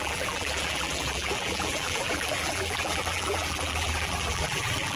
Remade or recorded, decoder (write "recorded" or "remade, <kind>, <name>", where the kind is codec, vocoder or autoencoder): remade, vocoder, BigVGAN v2